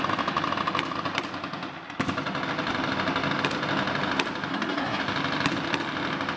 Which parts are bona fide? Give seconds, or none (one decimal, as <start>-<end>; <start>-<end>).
0.0-4.5; 5.0-6.4